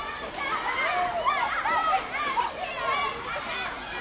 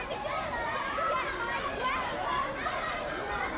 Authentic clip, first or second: first